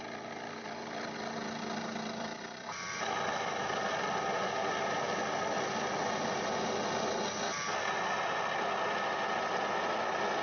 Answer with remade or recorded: recorded